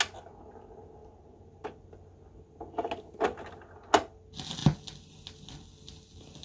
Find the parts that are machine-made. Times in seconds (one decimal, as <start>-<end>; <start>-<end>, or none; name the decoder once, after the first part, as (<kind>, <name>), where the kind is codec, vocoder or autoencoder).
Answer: none